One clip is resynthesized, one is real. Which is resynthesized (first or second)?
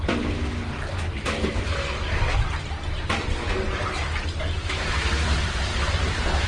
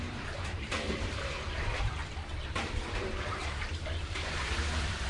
second